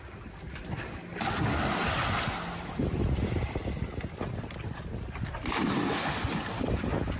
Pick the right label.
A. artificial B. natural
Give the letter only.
B